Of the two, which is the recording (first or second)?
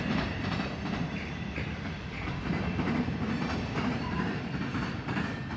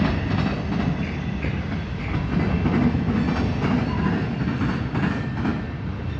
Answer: second